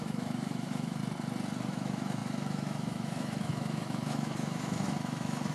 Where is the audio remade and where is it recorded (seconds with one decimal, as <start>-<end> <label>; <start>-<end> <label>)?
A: 0.0-1.0 remade; 1.0-1.7 recorded; 1.7-5.5 remade